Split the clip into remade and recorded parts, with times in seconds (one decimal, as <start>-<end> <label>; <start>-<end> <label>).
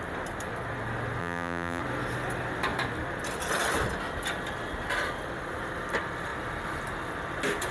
0.0-1.2 recorded; 1.2-1.8 remade; 1.8-7.7 recorded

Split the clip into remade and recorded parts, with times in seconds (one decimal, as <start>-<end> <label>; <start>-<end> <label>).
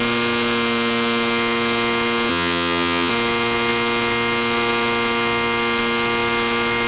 0.0-2.3 recorded; 2.3-3.1 remade; 3.1-6.9 recorded